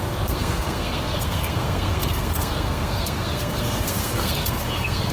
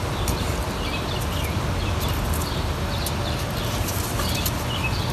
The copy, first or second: first